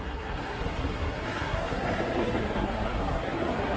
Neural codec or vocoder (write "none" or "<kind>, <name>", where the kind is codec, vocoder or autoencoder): codec, SNAC